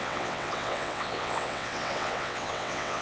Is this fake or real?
fake